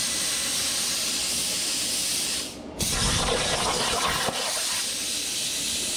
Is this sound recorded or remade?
recorded